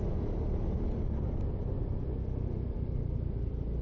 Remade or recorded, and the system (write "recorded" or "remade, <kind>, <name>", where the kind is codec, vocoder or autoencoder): remade, vocoder, BigVGAN v2